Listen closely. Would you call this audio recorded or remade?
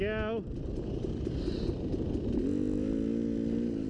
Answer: recorded